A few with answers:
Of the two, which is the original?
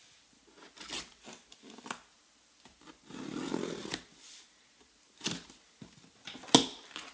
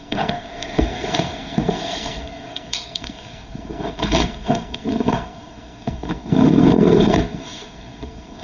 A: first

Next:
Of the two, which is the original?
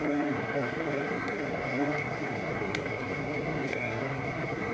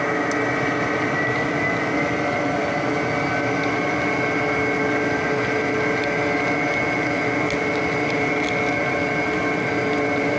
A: second